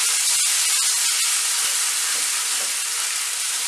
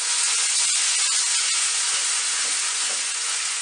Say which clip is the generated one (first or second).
second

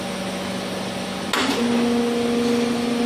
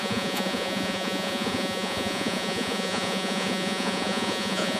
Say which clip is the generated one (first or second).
second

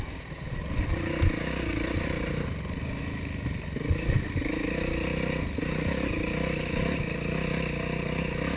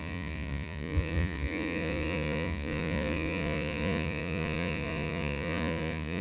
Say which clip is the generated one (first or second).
second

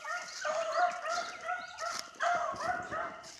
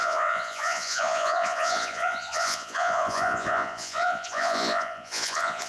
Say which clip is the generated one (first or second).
second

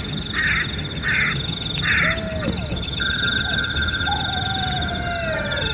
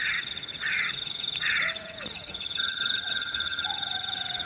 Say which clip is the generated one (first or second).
second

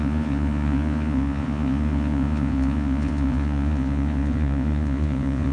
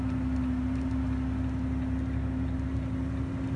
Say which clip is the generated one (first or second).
first